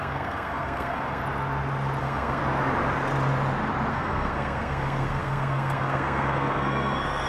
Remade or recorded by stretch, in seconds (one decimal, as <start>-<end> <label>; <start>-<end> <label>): 0.0-1.2 remade; 1.2-2.0 recorded; 2.0-2.4 remade; 2.4-3.9 recorded; 3.9-7.3 remade